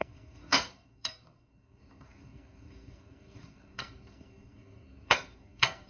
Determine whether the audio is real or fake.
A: fake